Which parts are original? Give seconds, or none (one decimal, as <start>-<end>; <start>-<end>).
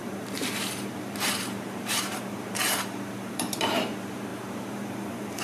none